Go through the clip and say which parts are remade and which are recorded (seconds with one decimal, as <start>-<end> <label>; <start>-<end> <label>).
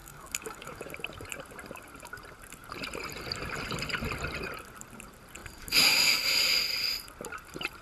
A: 0.0-0.9 remade; 0.9-7.8 recorded